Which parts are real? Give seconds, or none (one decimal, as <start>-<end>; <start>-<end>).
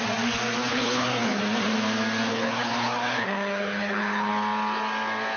0.0-0.7; 1.4-2.3; 4.3-5.4